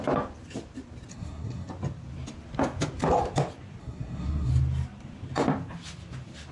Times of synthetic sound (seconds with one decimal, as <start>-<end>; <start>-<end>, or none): 1.1-1.7; 3.8-4.5